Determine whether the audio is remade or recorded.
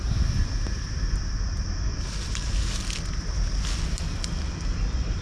recorded